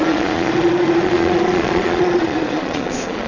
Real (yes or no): no